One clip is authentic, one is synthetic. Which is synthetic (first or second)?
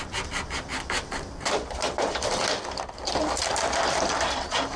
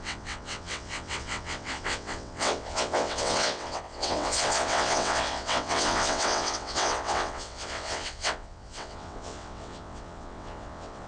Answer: second